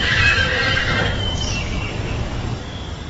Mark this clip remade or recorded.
remade